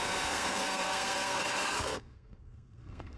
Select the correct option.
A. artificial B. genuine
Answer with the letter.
A